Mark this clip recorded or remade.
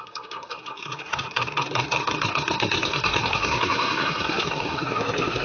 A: remade